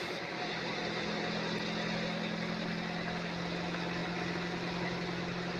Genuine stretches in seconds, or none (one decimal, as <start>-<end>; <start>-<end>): 0.0-5.6